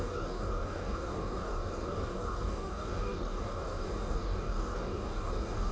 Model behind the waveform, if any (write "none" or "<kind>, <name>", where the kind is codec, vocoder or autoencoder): codec, DAC